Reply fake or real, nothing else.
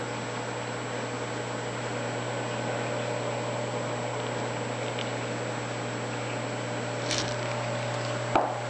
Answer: real